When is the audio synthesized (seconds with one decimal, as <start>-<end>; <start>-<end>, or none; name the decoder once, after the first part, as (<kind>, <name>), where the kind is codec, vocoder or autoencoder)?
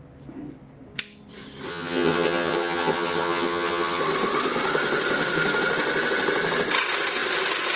1.7-4.0 (vocoder, HiFi-GAN)